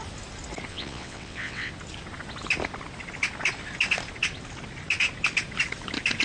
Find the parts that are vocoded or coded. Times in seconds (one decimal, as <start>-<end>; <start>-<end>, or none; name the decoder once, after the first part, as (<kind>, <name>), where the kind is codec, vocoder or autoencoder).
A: 0.7-1.7 (vocoder, WaveNeXt)